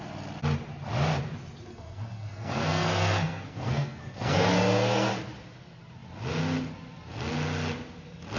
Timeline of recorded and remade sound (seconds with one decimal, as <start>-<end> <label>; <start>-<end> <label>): 0.0-1.7 recorded; 1.7-5.1 remade; 5.1-8.4 recorded